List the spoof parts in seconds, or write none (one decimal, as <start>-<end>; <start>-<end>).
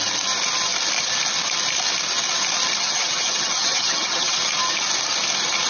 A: 2.8-4.4